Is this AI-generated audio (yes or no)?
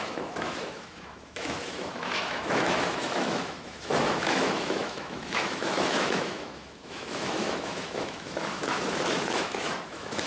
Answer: yes